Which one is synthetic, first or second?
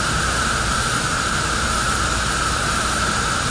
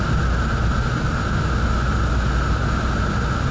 first